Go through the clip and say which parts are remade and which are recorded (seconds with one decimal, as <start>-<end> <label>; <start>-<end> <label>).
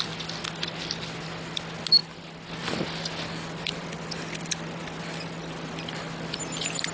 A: 0.0-6.9 recorded